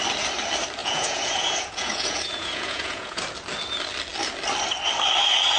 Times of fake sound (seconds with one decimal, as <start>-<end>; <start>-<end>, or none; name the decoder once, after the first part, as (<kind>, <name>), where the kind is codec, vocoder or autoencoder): 0.8-3.2 (vocoder, Vocos)